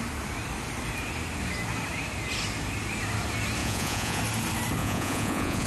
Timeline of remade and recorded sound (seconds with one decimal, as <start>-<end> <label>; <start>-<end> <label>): 0.0-3.6 recorded; 3.6-4.2 remade; 4.2-4.8 recorded; 4.8-5.7 remade